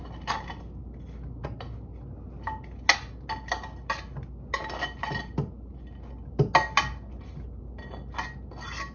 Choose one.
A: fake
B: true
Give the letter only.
B